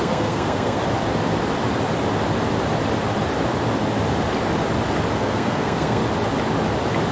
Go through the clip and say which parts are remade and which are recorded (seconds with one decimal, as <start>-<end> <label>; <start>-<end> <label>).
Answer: 0.0-0.8 remade; 0.8-5.1 recorded; 5.1-6.0 remade; 6.0-7.1 recorded